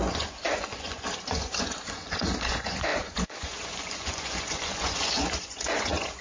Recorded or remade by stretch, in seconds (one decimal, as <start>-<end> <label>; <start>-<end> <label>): 0.0-6.2 remade